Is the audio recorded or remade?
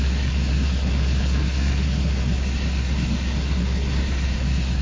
remade